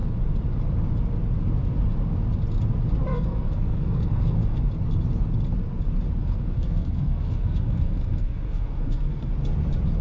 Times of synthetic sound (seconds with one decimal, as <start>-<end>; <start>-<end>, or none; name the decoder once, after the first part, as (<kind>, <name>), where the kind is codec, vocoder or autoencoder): 3.1-4.6 (codec, SNAC); 6.2-9.3